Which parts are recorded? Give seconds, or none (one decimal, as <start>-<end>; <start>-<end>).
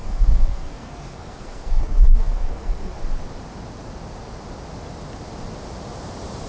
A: 2.9-6.5